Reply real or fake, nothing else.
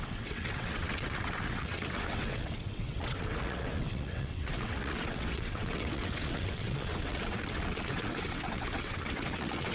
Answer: fake